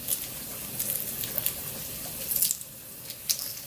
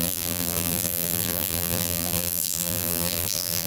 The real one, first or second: first